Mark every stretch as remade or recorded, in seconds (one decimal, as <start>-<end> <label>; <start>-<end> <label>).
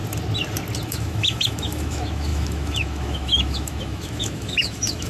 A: 0.0-0.9 recorded; 0.9-5.1 remade